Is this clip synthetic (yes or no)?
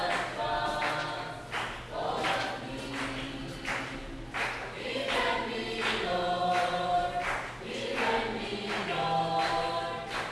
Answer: no